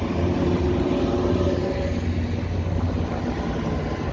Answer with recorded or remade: recorded